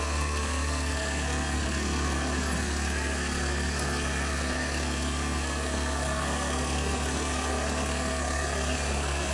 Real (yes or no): no